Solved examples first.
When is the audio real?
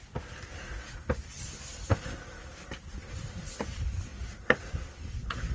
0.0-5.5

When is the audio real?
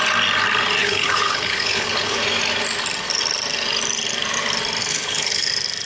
0.0-0.8; 2.2-4.9; 5.5-5.9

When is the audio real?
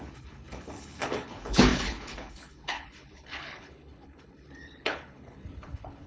none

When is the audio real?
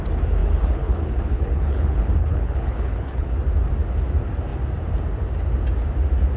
0.0-0.4; 3.3-6.4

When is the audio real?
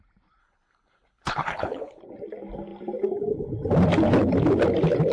0.0-0.4; 2.0-5.1